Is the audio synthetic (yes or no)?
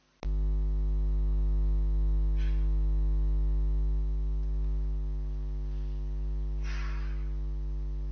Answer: no